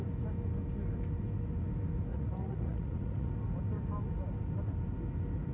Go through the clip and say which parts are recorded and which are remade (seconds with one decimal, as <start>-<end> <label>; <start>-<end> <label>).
0.0-2.1 recorded; 2.1-3.3 remade; 3.3-5.5 recorded